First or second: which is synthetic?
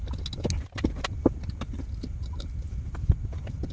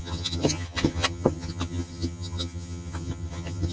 second